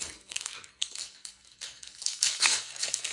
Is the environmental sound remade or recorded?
remade